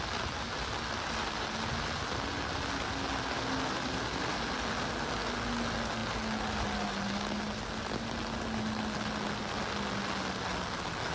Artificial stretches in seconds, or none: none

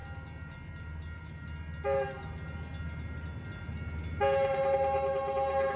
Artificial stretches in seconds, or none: none

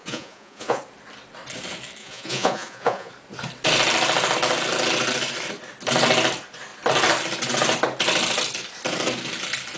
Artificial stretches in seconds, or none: 0.0-0.8; 2.0-3.1